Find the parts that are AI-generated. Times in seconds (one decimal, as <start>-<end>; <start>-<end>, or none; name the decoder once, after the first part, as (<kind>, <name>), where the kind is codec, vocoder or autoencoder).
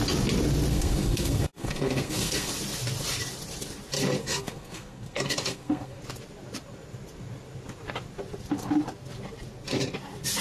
0.7-2.5 (codec, SNAC); 4.2-6.0